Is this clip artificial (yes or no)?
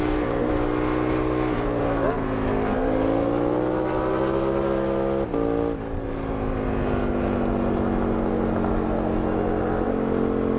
no